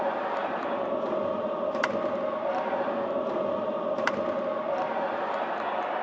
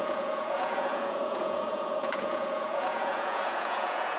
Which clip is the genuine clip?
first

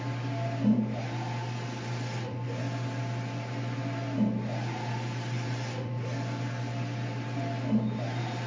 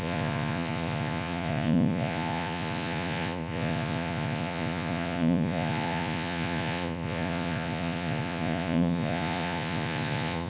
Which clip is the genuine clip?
first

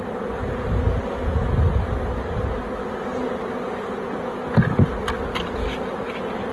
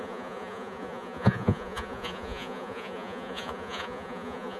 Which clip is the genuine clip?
first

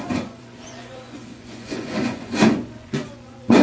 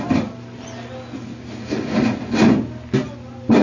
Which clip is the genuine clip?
second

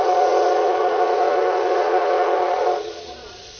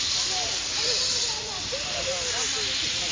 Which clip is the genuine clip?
second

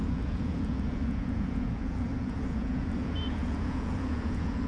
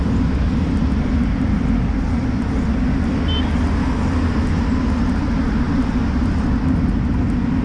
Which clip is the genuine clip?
second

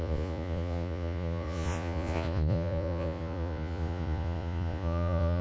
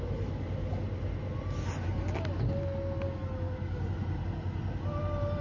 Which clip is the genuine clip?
second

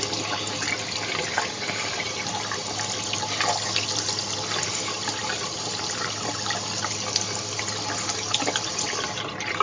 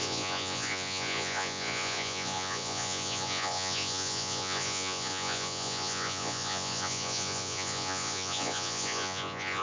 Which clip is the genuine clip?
first